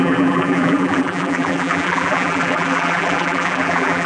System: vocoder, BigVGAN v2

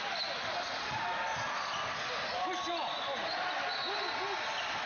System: none